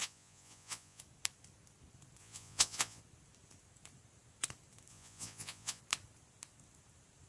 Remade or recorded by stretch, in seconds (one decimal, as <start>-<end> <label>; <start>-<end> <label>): 0.0-1.0 remade; 1.0-2.2 recorded; 2.2-3.0 remade; 3.0-4.9 recorded; 4.9-5.8 remade; 5.8-7.3 recorded